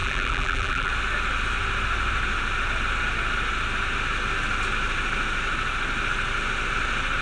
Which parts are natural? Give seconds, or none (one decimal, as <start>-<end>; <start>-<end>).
0.9-7.2